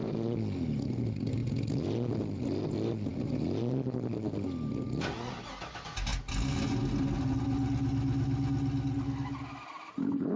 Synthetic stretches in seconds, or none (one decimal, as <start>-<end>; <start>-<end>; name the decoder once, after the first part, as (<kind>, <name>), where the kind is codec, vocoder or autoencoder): none